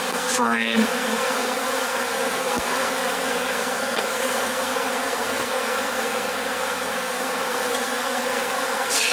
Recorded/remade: remade